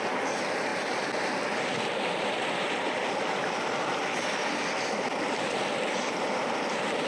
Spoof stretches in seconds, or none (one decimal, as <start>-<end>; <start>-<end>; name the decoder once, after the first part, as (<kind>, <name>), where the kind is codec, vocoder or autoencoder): none